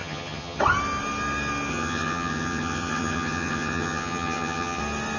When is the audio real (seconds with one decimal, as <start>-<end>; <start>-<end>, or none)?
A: 0.6-1.7; 4.8-5.2